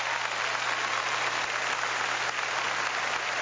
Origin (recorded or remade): recorded